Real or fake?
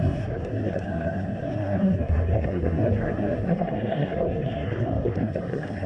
fake